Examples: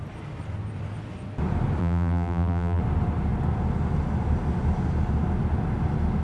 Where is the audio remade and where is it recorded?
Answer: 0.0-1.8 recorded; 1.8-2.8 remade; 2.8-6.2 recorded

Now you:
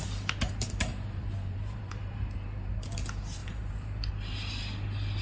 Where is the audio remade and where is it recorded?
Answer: 0.0-0.9 recorded; 0.9-2.7 remade; 2.7-3.4 recorded; 3.4-4.1 remade; 4.1-5.2 recorded

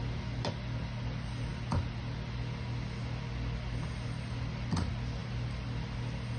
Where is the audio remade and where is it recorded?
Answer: 0.0-6.4 recorded

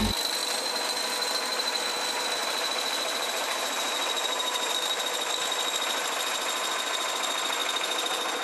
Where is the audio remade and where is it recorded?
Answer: 0.0-0.4 recorded; 0.4-1.8 remade; 1.8-2.4 recorded; 2.4-5.0 remade; 5.0-8.4 recorded

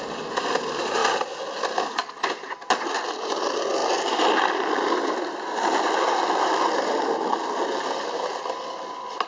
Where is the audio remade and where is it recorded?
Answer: 0.0-1.0 remade; 1.0-2.3 recorded; 2.3-9.3 remade

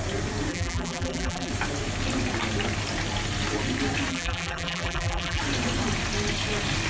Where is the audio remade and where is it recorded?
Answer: 0.0-0.5 recorded; 0.5-1.5 remade; 1.5-4.1 recorded; 4.1-5.4 remade; 5.4-6.9 recorded

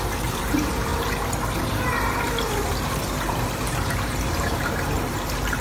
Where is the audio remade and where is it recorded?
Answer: 0.0-0.9 remade; 0.9-1.7 recorded; 1.7-5.6 remade